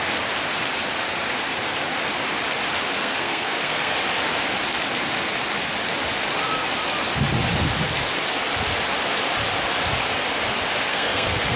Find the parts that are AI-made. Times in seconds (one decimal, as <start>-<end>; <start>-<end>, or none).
3.0-4.0; 10.9-11.6